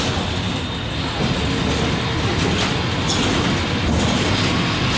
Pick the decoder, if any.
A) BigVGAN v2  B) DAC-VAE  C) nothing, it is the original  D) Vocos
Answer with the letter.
C